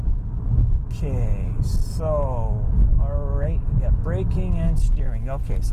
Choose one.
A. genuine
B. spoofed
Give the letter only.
A